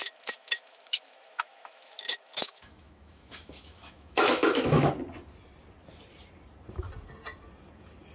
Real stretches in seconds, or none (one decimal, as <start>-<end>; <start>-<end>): 4.9-8.1